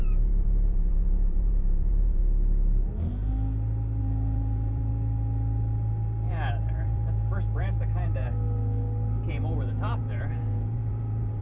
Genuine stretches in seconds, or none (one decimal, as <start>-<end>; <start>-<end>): 2.2-4.0; 4.9-6.3; 8.3-9.3